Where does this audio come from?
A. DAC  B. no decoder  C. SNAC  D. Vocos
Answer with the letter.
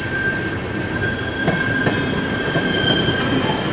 B